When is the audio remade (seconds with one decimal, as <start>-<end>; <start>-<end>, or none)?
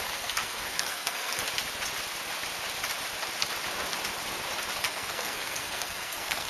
0.0-1.4; 4.8-6.5